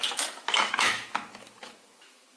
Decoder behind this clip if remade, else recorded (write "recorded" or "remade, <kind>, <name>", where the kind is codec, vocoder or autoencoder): remade, autoencoder, DAC-VAE